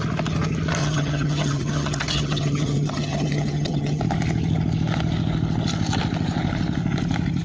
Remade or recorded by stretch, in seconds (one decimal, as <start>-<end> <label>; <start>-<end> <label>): 0.0-0.8 recorded; 0.8-4.0 remade; 4.0-7.4 recorded